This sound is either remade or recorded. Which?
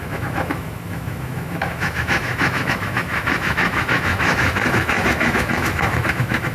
remade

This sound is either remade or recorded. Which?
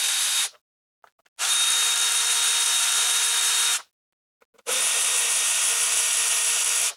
recorded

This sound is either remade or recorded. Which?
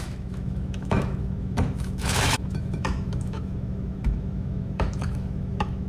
remade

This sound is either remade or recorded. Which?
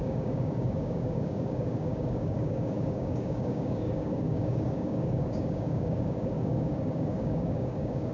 remade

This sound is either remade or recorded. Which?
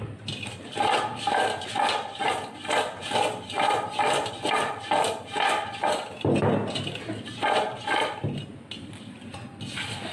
recorded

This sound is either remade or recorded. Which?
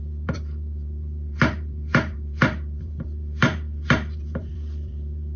remade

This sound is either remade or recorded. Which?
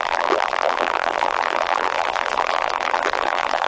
remade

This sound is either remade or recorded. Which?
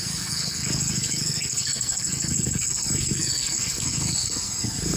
remade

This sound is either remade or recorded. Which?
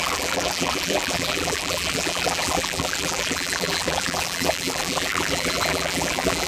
remade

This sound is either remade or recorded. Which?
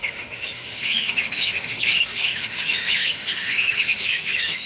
remade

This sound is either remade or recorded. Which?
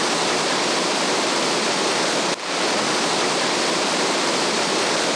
recorded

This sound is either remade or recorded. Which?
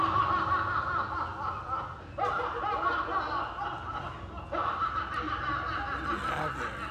recorded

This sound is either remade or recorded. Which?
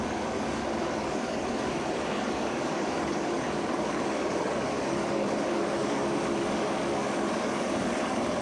remade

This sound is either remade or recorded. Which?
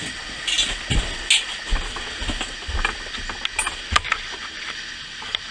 recorded